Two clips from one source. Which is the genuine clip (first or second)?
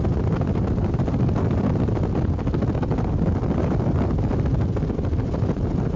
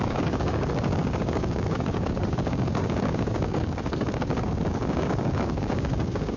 first